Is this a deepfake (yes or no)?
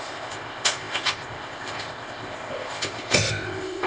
yes